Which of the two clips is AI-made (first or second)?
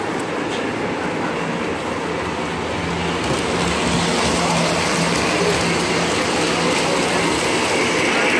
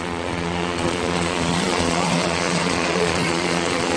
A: second